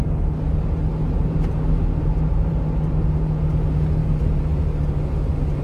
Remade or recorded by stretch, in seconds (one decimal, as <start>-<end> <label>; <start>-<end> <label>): 0.0-5.6 recorded